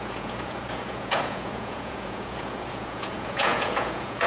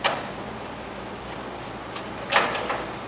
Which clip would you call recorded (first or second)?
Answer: second